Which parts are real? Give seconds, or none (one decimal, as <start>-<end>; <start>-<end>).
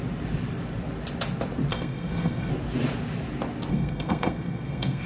0.0-1.7; 2.5-3.7